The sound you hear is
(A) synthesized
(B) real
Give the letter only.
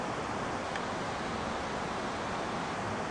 B